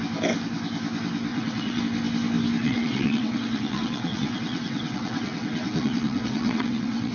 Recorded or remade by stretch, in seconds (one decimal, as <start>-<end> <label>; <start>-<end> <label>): 0.0-1.3 recorded; 1.3-1.8 remade; 1.8-2.6 recorded; 2.6-7.1 remade